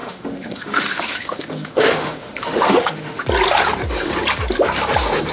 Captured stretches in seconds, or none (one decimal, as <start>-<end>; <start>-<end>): 3.2-5.3